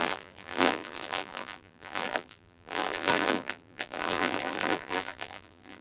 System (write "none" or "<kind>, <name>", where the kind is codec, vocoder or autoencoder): vocoder, BigVGAN v2